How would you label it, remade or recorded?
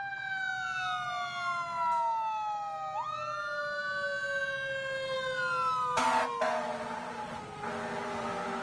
recorded